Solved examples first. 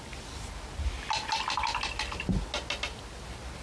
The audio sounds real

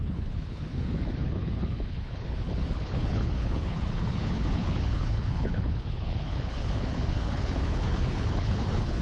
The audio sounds fake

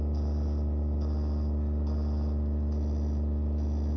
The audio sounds real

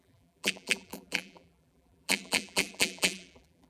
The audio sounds fake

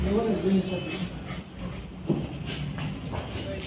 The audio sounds real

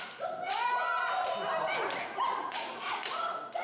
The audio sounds real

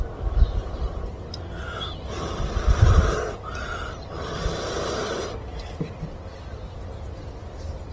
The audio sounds real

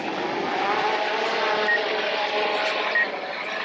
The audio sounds real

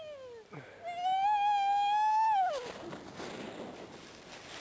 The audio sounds real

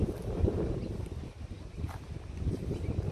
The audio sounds fake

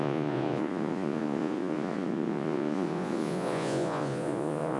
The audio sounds fake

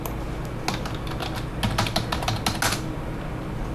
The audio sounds real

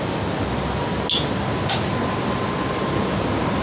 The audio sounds real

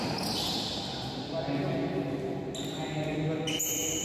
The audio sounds real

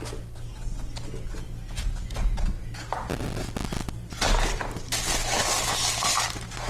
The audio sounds real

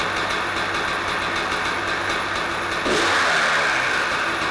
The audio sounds real